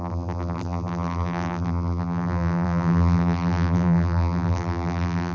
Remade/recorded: remade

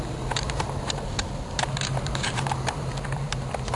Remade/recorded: remade